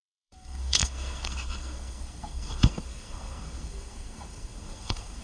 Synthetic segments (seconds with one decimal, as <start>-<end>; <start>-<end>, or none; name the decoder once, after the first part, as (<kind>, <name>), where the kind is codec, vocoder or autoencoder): 0.0-5.2 (codec, SNAC)